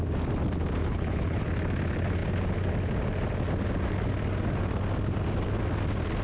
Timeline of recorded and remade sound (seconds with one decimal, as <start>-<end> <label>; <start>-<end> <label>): 0.0-0.8 recorded; 0.8-1.4 remade; 1.4-6.2 recorded